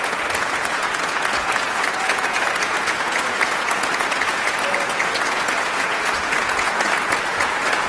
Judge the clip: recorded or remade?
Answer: remade